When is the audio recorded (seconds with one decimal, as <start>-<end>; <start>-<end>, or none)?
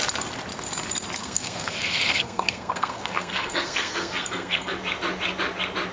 0.0-1.2; 4.7-5.9